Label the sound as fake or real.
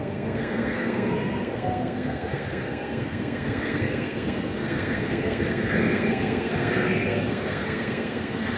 fake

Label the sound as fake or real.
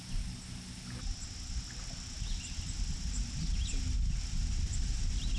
real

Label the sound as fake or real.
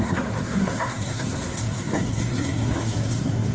fake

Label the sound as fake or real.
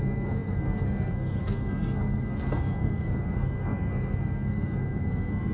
fake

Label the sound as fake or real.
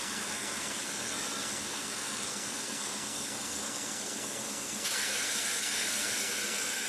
fake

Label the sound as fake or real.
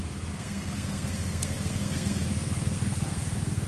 fake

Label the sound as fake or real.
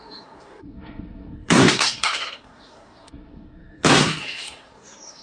fake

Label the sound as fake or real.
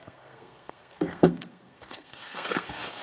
fake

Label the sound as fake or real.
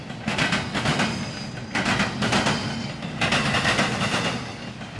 real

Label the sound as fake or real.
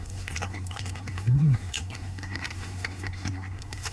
fake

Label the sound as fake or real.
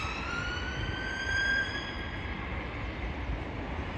real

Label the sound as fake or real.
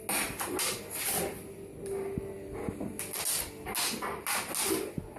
real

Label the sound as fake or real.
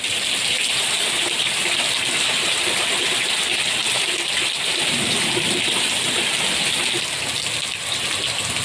real